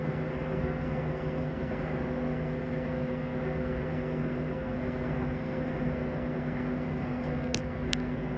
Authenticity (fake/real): fake